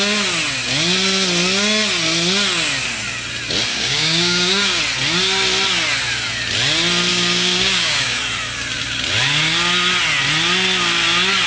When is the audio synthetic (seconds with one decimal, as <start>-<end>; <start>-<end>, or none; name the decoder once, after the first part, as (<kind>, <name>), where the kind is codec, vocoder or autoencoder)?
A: 3.7-4.8 (codec, DAC); 7.1-8.2

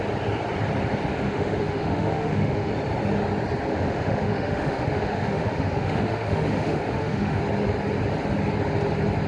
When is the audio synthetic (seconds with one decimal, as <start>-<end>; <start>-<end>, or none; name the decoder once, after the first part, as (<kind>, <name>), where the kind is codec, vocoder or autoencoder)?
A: 1.1-2.7 (autoencoder, DAC-VAE); 3.7-7.4